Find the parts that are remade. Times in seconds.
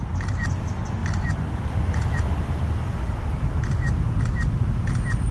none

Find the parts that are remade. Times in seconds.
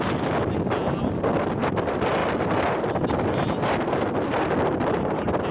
none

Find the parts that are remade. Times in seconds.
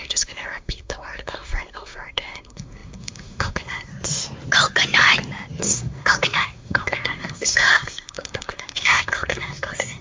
0.0-3.9 (codec, SNAC); 5.6-10.0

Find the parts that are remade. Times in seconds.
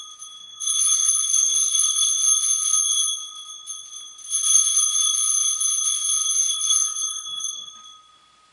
0.4-2.1 (codec, SNAC); 6.4-7.7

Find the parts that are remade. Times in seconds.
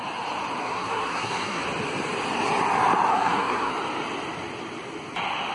0.6-1.6 (codec, SNAC); 3.1-3.7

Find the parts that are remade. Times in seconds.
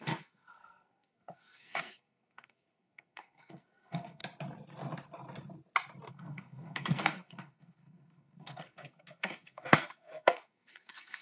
0.0-4.2 (codec, SNAC); 6.1-11.2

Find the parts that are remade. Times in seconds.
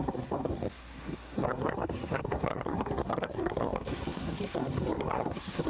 0.0-5.7 (codec, SNAC)